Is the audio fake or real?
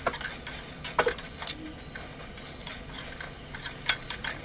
real